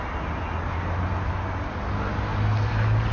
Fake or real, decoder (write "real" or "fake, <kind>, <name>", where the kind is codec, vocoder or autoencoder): real